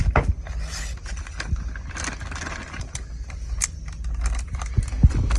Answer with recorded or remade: recorded